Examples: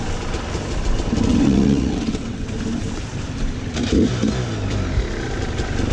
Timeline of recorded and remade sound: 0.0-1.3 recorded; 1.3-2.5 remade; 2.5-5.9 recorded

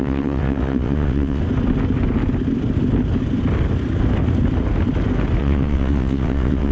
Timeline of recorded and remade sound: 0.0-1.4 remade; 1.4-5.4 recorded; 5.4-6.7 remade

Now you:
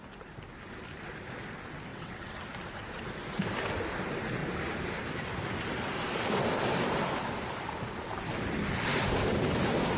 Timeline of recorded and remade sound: 0.0-1.9 recorded; 1.9-2.4 remade; 2.4-10.0 recorded

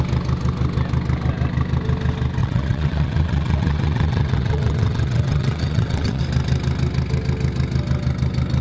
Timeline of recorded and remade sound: 0.0-2.4 recorded; 2.4-6.2 remade; 6.2-8.6 recorded

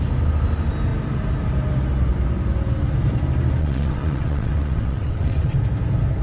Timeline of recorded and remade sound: 0.0-3.6 recorded; 3.6-5.6 remade; 5.6-6.2 recorded

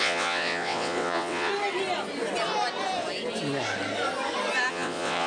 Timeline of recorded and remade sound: 0.0-1.5 remade; 1.5-4.7 recorded; 4.7-5.3 remade